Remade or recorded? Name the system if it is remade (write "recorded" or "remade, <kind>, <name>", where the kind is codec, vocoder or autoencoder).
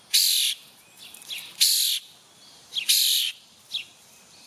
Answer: recorded